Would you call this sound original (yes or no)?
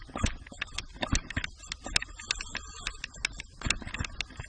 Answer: yes